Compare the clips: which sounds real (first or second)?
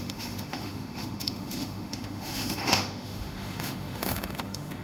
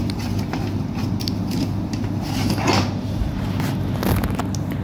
second